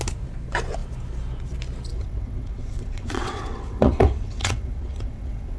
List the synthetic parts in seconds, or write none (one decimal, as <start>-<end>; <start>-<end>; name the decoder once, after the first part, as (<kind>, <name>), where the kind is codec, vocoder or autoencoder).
1.9-5.6 (vocoder, WaveNeXt)